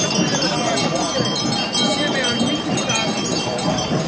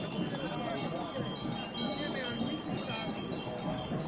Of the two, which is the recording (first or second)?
second